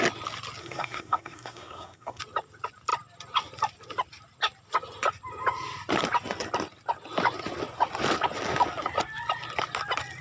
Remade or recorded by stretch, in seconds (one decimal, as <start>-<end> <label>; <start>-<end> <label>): 0.0-0.6 recorded; 0.6-2.2 remade; 2.2-10.2 recorded